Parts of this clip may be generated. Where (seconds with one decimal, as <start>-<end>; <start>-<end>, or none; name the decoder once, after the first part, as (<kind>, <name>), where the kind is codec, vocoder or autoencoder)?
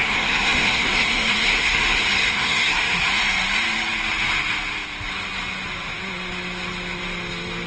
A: 0.0-3.1 (codec, SNAC)